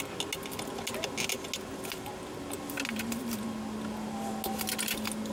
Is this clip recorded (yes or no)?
yes